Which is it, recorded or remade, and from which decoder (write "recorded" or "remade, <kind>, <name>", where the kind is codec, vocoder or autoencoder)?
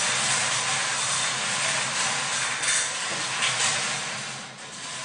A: recorded